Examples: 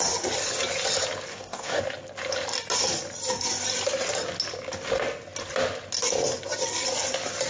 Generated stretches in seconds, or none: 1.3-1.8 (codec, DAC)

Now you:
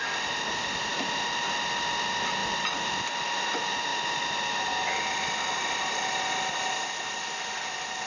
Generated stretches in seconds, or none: none

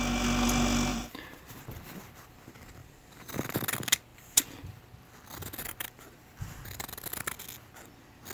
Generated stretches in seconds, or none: 0.9-1.5 (vocoder, BigVGAN v2); 2.8-3.4; 4.1-4.8